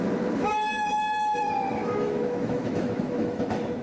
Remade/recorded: remade